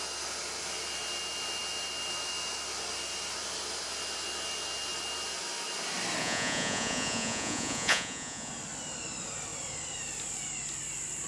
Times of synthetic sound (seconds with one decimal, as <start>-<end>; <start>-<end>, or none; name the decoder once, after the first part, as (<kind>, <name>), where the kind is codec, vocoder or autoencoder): 6.2-8.5 (vocoder, Vocos)